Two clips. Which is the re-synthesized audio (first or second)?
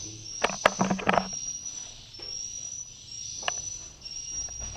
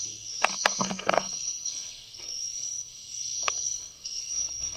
second